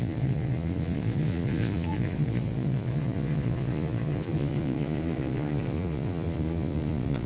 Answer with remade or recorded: remade